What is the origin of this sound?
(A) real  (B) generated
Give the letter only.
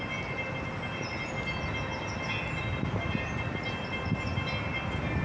A